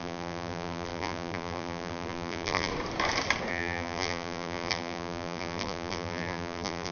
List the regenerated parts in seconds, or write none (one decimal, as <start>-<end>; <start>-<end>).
0.0-2.7; 3.5-6.9